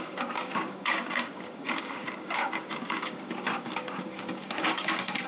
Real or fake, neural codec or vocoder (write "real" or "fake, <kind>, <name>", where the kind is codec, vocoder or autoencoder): fake, codec, DAC